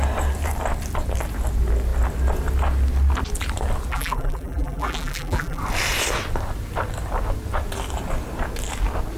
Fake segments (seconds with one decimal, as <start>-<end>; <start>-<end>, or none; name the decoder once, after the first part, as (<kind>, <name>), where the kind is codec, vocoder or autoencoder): 3.9-5.6 (vocoder, BigVGAN v2)